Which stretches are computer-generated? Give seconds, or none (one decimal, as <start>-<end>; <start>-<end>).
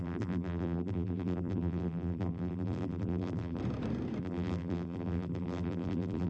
0.0-3.6; 4.2-6.3